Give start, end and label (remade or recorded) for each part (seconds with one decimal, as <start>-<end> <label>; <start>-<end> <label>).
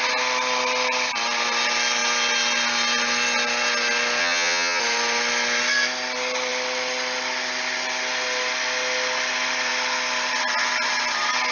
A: 0.0-4.2 recorded; 4.2-4.8 remade; 4.8-11.5 recorded